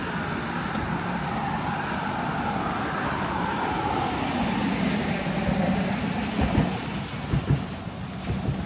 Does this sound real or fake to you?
real